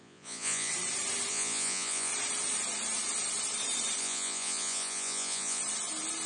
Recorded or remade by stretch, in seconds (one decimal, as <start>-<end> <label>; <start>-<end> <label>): 0.0-0.7 remade; 0.7-1.3 recorded; 1.3-2.1 remade; 2.1-4.0 recorded; 4.0-5.6 remade; 5.6-6.3 recorded